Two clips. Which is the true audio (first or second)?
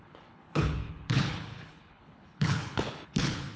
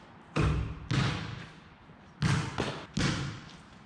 second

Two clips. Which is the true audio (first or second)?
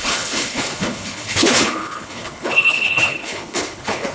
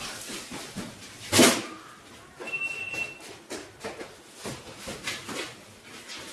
second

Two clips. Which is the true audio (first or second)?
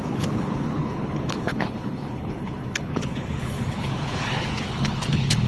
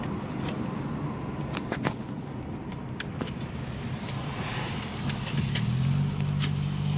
second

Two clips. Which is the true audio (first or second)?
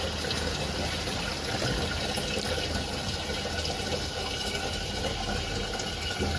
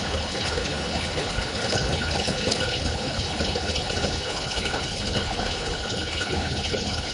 first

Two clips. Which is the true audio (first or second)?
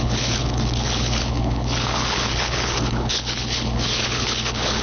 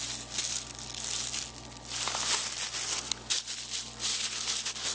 second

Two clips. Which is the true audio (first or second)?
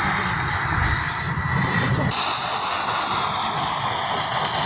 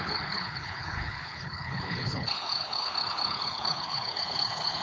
first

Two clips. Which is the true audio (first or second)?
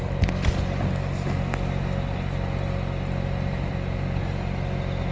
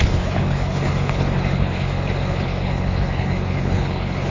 first